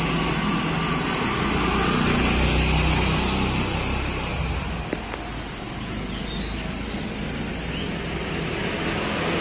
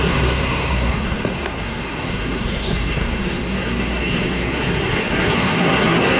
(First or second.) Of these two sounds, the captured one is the first